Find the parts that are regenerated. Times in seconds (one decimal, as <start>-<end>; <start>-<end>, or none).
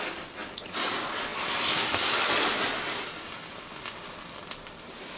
none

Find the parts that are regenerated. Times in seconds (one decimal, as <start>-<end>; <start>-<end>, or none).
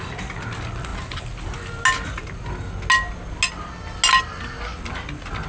none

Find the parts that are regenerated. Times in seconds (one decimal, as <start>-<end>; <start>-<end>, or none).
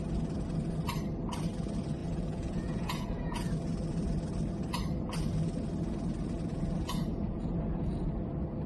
2.0-3.5; 6.5-8.1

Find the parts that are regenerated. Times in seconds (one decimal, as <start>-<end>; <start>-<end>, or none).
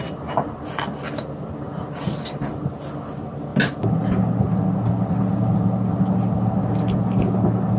none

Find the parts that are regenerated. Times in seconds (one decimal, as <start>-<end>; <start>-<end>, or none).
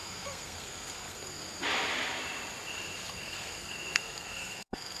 0.0-1.4; 3.1-5.0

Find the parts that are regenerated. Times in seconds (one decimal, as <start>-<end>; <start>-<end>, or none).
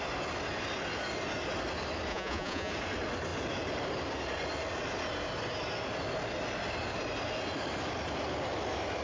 2.1-2.7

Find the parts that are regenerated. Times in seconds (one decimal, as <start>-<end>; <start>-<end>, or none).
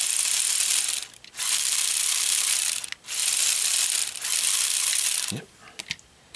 none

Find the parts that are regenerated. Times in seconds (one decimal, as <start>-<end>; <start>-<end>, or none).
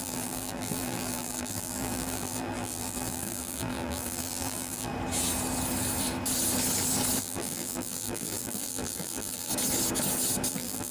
0.0-4.9; 7.2-9.5; 10.5-10.9